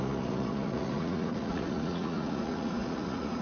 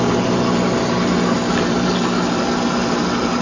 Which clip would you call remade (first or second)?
first